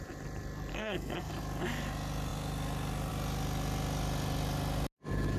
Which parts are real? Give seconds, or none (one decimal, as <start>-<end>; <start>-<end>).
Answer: 0.0-0.7; 1.3-5.4